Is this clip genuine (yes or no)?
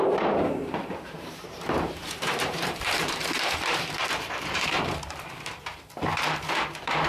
no